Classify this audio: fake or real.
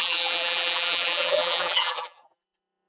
fake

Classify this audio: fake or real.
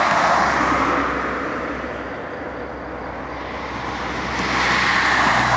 real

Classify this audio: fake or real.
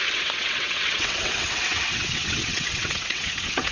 fake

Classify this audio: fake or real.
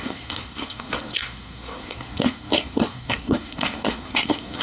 fake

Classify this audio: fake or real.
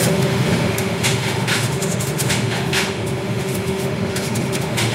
fake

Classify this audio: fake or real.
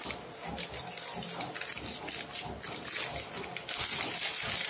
real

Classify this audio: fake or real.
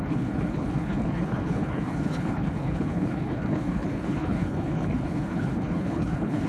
fake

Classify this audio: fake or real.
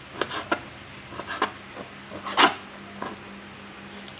real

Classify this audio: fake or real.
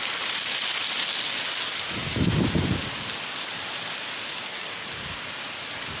real